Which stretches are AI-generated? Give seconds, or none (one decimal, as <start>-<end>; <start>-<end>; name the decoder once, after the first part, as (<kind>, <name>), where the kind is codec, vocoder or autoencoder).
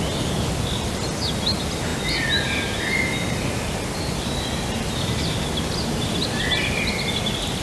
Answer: none